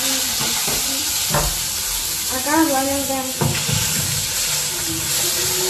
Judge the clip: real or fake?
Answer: real